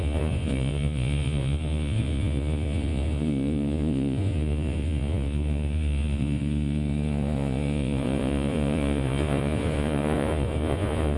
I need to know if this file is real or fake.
fake